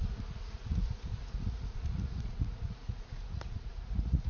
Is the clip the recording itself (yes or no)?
no